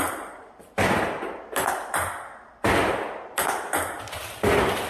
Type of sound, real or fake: real